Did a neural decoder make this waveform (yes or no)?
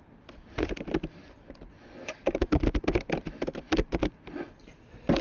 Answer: no